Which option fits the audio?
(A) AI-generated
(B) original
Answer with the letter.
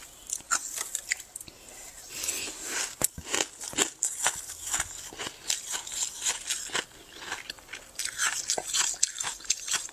B